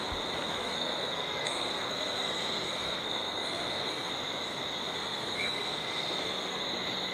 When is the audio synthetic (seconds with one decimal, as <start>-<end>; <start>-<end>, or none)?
0.5-4.1; 4.8-6.6